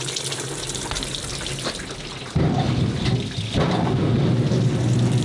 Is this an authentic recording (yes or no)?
yes